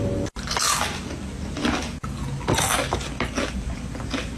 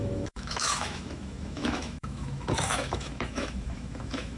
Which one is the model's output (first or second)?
second